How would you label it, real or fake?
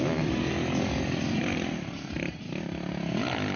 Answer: real